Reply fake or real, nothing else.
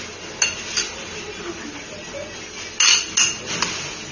real